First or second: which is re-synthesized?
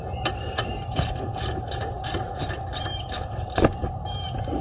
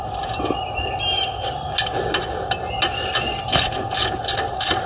first